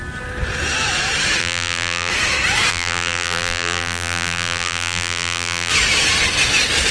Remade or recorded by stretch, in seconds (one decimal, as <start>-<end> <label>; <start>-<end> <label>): 0.0-1.4 recorded; 1.4-2.1 remade; 2.1-2.7 recorded; 2.7-5.7 remade; 5.7-6.9 recorded